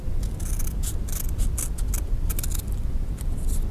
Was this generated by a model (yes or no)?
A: no